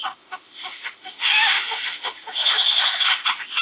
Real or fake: fake